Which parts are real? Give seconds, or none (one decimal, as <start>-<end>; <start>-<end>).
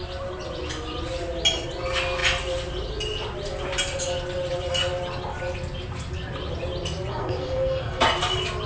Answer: 0.0-7.1; 8.0-8.7